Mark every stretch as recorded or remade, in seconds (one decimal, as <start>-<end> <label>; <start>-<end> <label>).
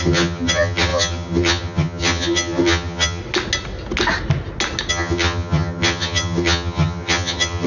0.0-3.2 remade; 3.2-4.9 recorded; 4.9-7.7 remade